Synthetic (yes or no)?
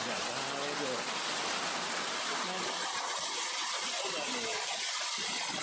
no